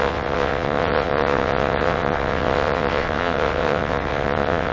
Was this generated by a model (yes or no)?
yes